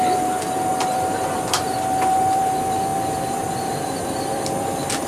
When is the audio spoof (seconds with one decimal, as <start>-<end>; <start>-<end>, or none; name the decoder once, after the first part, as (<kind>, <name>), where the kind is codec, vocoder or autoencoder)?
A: 0.0-5.1 (vocoder, BigVGAN v2)